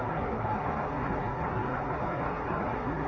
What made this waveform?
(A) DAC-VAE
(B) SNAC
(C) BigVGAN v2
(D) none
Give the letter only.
B